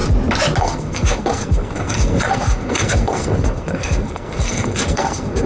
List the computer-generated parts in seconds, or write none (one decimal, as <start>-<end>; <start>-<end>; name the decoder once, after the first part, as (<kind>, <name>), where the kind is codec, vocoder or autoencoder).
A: 0.6-5.5 (codec, SNAC)